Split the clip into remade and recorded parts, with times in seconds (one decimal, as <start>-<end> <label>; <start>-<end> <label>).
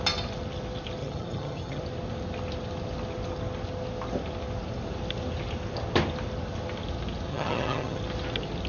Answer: 0.0-1.0 recorded; 1.0-1.8 remade; 1.8-7.3 recorded; 7.3-8.0 remade; 8.0-8.7 recorded